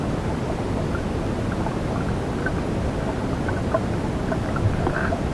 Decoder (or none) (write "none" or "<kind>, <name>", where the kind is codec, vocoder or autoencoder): none